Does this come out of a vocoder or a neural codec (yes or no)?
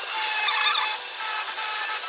no